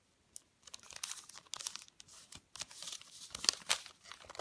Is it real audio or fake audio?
real